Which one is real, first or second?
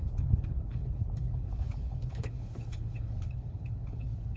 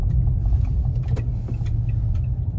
second